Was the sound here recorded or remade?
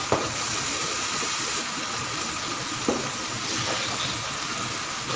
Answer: recorded